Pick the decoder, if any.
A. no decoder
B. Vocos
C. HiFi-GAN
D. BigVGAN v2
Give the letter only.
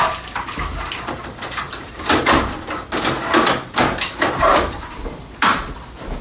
A